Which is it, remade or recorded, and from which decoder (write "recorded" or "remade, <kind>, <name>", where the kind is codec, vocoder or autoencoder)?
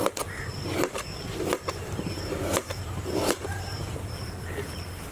remade, vocoder, BigVGAN v2